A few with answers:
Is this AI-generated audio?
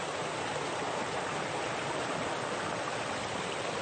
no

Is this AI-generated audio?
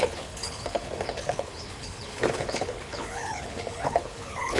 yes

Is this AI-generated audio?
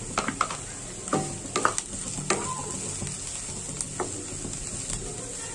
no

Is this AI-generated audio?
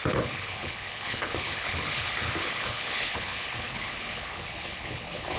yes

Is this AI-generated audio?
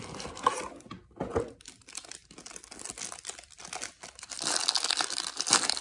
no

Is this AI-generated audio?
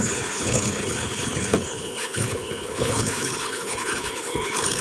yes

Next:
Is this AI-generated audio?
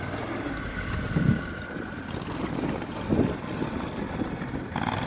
no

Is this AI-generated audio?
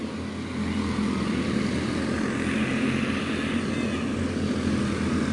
no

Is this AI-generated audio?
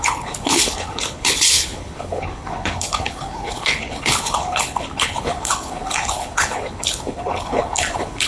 yes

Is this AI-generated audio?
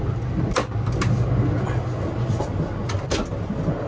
no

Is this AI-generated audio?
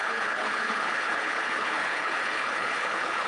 yes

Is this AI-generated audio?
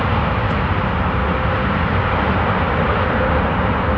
no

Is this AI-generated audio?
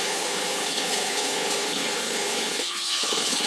yes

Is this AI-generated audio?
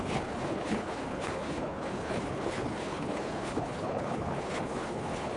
yes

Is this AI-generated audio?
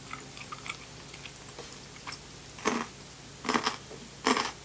no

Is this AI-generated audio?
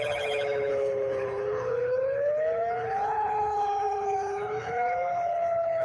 yes